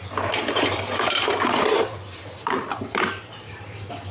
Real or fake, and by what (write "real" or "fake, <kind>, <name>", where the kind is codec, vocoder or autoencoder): fake, vocoder, BigVGAN v2